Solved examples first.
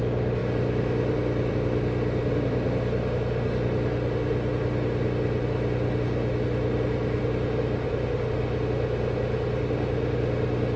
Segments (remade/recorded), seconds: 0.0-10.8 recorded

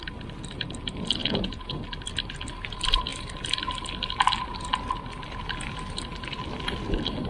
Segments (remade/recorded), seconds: 0.0-1.2 recorded; 1.2-1.8 remade; 1.8-7.3 recorded

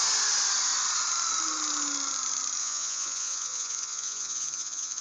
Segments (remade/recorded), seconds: 0.0-2.6 recorded; 2.6-5.0 remade